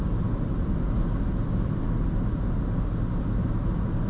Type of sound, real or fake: real